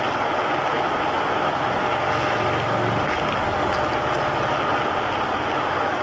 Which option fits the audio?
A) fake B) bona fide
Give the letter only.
B